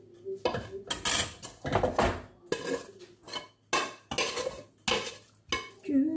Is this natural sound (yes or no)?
yes